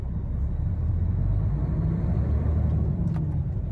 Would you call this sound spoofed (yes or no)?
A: no